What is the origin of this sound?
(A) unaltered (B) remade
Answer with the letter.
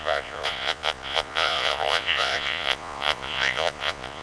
B